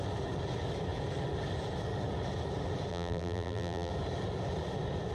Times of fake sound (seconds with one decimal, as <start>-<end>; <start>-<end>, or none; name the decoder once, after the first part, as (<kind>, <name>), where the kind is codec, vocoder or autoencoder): 2.9-3.9 (vocoder, BigVGAN v2)